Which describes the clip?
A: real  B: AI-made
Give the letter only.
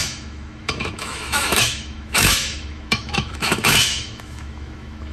B